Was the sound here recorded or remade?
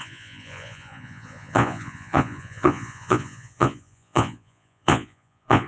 remade